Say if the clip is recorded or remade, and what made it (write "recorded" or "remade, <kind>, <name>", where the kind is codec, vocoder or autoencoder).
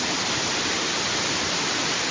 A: recorded